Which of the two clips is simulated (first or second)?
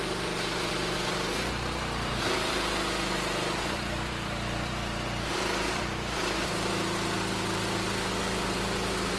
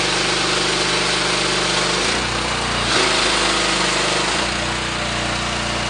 first